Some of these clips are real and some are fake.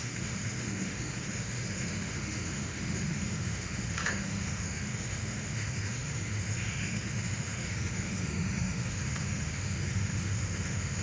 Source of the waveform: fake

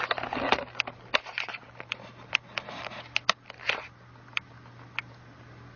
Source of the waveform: real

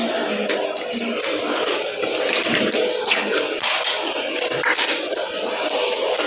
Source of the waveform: real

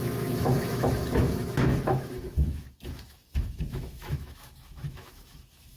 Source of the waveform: fake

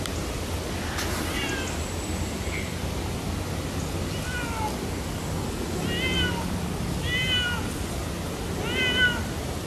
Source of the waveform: real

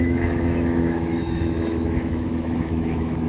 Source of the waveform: fake